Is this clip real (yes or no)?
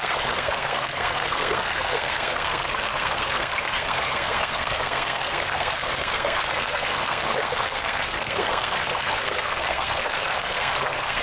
no